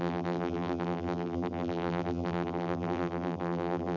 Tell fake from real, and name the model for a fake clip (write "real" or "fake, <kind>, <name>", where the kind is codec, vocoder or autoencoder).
fake, vocoder, BigVGAN v2